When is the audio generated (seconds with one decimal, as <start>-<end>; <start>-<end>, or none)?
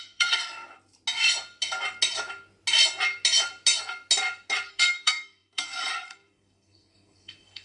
0.0-0.4; 4.7-7.6